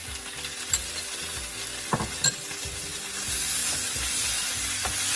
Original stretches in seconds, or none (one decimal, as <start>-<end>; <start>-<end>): 0.0-5.2